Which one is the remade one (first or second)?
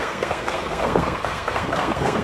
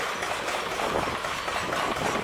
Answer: first